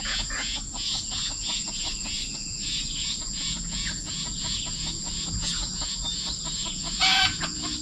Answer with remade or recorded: remade